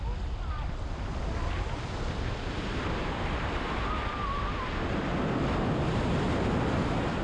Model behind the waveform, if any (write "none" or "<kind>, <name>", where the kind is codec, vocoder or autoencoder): none